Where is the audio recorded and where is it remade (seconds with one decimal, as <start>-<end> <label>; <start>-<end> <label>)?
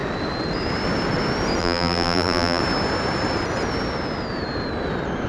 0.0-1.6 recorded; 1.6-2.6 remade; 2.6-5.3 recorded